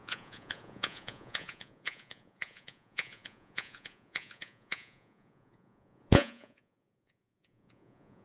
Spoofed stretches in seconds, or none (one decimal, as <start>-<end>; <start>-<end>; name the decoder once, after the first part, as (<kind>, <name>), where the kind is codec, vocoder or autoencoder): 0.0-8.2 (vocoder, Vocos)